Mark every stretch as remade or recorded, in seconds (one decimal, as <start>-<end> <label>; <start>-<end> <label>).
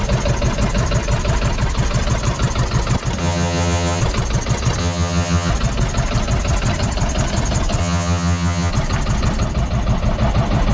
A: 0.0-3.2 recorded; 3.2-4.0 remade; 4.0-4.8 recorded; 4.8-5.5 remade; 5.5-7.8 recorded; 7.8-8.7 remade; 8.7-10.7 recorded